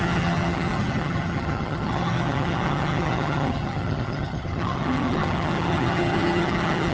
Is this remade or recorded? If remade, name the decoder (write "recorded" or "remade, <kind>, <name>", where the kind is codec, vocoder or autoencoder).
remade, vocoder, HiFi-GAN